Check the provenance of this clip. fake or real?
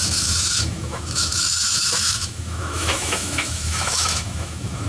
fake